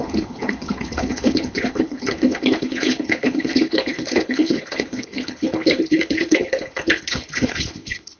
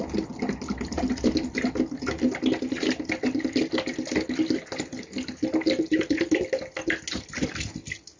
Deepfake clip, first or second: first